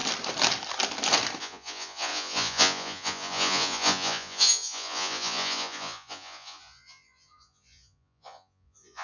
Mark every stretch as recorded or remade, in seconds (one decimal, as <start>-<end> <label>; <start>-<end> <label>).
0.0-1.4 recorded; 1.4-9.0 remade